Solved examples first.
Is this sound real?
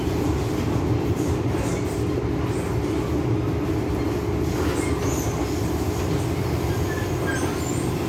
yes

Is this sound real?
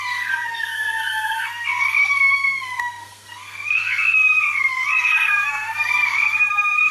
no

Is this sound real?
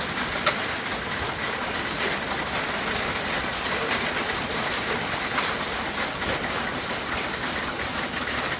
yes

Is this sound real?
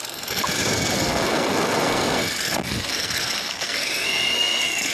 no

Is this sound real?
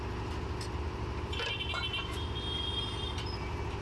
yes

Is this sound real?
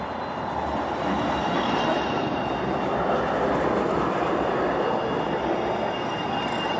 yes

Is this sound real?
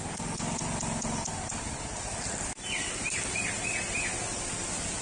yes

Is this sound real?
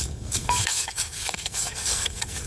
no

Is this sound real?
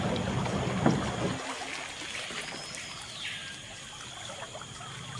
yes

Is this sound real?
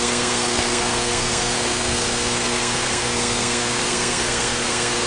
no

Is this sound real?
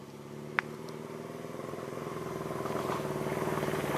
yes